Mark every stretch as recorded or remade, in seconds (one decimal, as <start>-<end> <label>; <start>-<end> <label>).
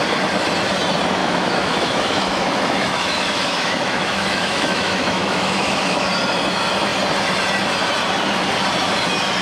0.0-1.2 recorded; 1.2-6.1 remade; 6.1-9.4 recorded